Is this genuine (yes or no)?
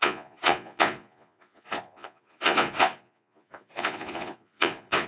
no